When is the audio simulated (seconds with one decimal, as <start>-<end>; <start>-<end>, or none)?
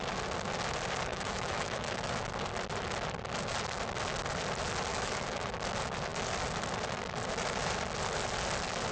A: 1.1-2.3; 4.9-5.5